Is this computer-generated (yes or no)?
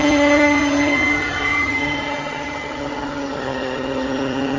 yes